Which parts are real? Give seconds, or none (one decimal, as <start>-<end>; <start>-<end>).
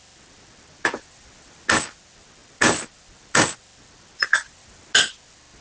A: 0.0-5.6